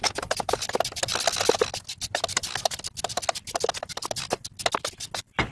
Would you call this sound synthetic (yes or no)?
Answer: no